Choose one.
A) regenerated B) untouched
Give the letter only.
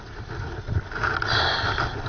B